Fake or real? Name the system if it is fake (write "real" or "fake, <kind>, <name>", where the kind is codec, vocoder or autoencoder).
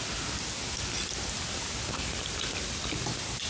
real